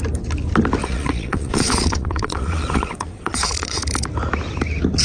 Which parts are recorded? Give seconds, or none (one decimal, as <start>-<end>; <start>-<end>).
0.0-0.8; 3.8-5.0